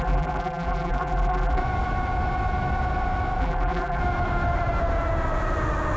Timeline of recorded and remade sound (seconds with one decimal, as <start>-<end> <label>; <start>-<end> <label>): 0.0-1.6 remade; 1.6-3.4 recorded; 3.4-4.0 remade; 4.0-6.0 recorded